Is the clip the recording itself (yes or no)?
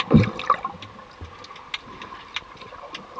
yes